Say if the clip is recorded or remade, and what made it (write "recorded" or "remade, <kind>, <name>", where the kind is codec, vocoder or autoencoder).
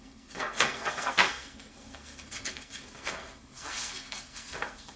remade, codec, SNAC